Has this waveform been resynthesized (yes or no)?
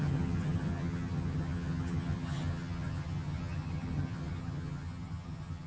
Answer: yes